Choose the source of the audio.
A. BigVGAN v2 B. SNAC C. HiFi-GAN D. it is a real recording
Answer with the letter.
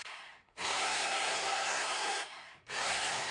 B